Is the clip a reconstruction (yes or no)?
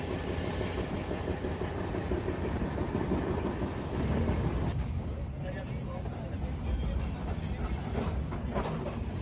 no